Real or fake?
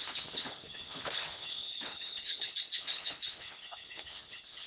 fake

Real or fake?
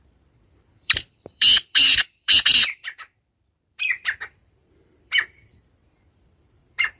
fake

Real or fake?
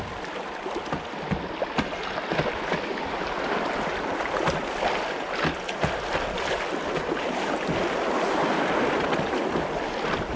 real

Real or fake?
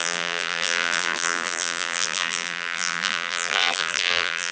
fake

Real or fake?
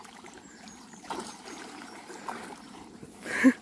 fake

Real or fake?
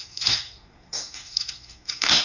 fake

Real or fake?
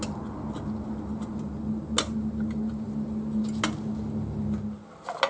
real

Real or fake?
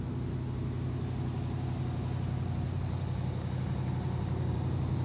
real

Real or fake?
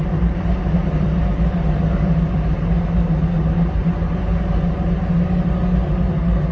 real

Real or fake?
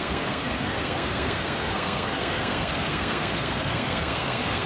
fake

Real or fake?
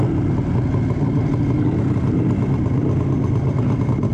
real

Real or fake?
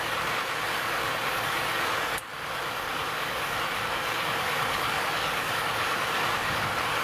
fake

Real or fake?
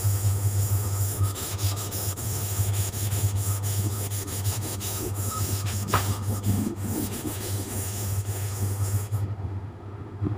fake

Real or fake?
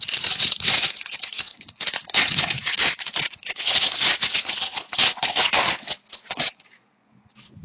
fake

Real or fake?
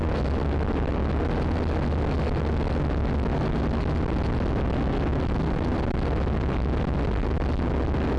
real